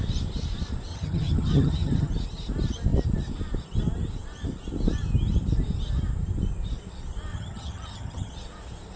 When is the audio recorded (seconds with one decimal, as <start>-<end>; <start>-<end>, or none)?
0.0-0.9; 2.1-7.3; 8.3-9.0